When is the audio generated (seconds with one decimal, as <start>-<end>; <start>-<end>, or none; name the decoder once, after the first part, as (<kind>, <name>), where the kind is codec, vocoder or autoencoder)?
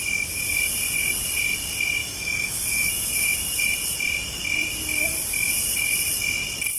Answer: 2.0-3.6 (autoencoder, DAC-VAE)